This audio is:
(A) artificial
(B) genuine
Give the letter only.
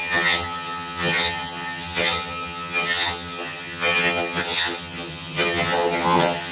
A